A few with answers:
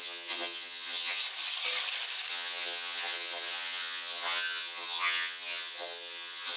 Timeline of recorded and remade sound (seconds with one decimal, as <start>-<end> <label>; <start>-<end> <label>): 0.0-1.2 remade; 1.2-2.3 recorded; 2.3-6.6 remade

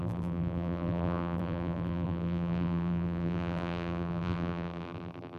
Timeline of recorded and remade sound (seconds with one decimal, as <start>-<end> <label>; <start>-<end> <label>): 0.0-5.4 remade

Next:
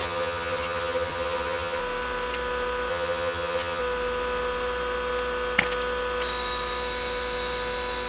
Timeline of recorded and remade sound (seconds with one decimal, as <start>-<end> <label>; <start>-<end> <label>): 0.0-1.8 remade; 1.8-2.9 recorded; 2.9-3.8 remade; 3.8-8.1 recorded